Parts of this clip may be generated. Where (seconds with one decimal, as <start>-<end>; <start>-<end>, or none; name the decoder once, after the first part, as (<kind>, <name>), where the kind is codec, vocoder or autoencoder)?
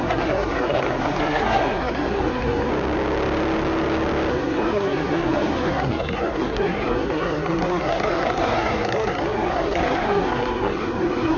0.0-2.7 (codec, SNAC); 4.3-11.4